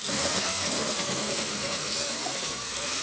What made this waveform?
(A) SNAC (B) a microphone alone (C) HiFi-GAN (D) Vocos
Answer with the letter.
A